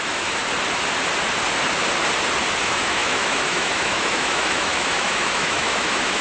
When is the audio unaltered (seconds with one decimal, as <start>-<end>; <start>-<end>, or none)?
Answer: 0.4-2.6